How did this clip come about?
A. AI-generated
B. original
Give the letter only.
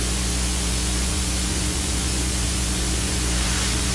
A